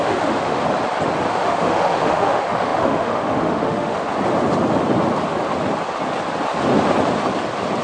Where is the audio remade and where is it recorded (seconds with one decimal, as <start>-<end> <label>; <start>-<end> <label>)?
0.0-0.6 remade; 0.6-1.3 recorded; 1.3-4.0 remade; 4.0-7.8 recorded